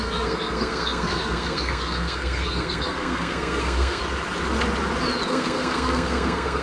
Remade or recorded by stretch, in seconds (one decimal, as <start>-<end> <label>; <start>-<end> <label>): 0.0-4.0 remade; 4.0-5.3 recorded; 5.3-6.6 remade